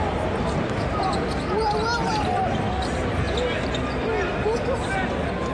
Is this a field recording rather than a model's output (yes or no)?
yes